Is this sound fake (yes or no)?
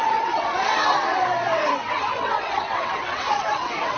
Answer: yes